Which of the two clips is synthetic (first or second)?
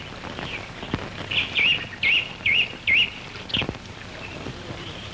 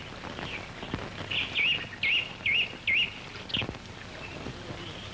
first